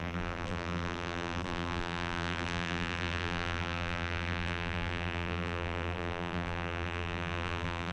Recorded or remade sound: remade